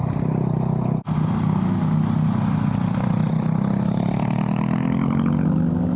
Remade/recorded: recorded